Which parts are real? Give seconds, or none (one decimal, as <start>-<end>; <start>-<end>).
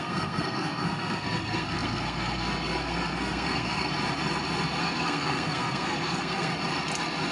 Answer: 3.9-4.8; 6.5-7.3